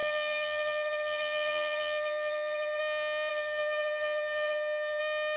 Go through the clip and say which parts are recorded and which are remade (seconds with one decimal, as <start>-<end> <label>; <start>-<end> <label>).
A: 0.0-2.8 remade; 2.8-3.3 recorded; 3.3-5.0 remade; 5.0-5.4 recorded